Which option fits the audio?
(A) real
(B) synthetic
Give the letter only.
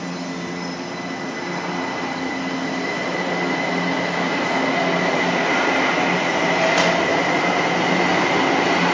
A